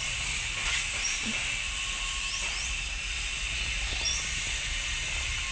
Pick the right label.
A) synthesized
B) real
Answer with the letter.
B